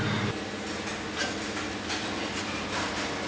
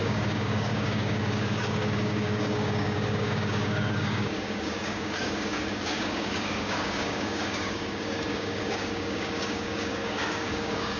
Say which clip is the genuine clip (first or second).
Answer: first